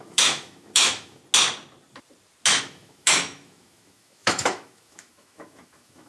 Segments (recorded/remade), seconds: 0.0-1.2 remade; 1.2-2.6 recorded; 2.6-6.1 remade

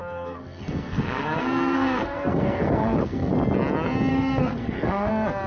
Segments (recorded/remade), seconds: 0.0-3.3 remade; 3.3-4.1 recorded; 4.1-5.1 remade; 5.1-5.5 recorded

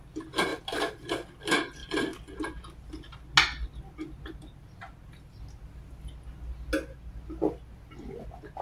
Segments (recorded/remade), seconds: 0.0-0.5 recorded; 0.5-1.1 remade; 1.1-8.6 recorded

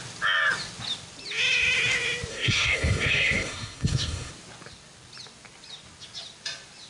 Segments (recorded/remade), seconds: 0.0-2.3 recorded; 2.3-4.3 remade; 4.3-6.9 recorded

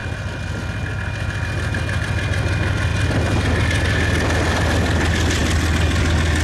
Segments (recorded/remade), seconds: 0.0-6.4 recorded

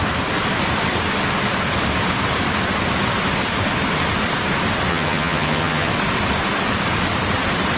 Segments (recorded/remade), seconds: 0.0-4.9 recorded; 4.9-5.9 remade; 5.9-7.8 recorded

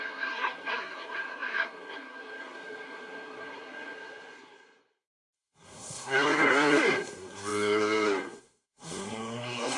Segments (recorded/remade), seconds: 0.0-9.8 remade

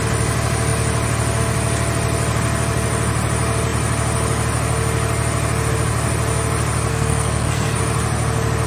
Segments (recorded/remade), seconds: 0.0-6.9 recorded; 6.9-7.8 remade; 7.8-8.7 recorded